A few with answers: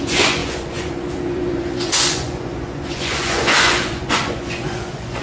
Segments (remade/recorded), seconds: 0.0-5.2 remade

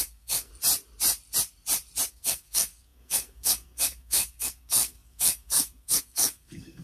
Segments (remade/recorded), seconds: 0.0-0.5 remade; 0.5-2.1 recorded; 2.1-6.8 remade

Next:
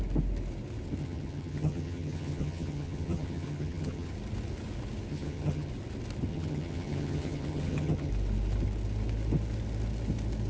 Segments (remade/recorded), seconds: 0.0-1.0 recorded; 1.0-4.1 remade; 4.1-5.1 recorded; 5.1-5.7 remade; 5.7-6.3 recorded; 6.3-8.1 remade; 8.1-10.5 recorded